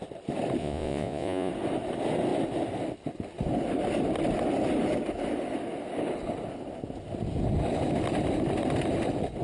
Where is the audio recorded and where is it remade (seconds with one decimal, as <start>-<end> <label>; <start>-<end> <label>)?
0.0-0.6 recorded; 0.6-1.5 remade; 1.5-9.4 recorded